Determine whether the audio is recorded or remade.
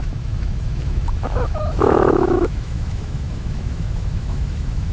remade